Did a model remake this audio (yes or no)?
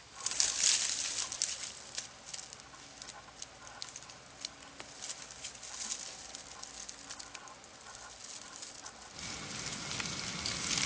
no